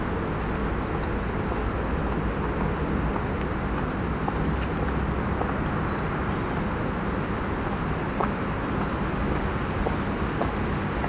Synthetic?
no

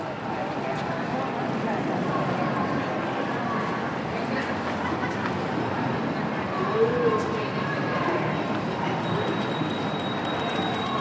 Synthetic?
no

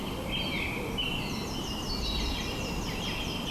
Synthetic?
no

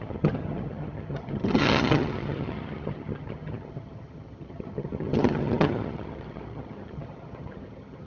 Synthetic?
yes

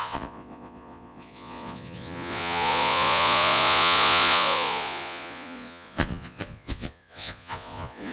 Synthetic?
yes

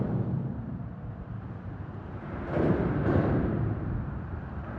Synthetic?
yes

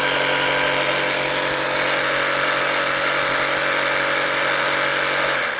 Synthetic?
no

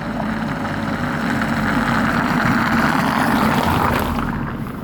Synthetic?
yes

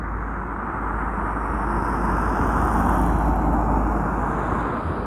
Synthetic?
no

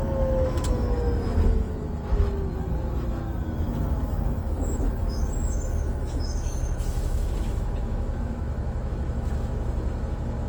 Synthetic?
yes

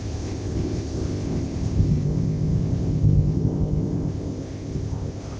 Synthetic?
yes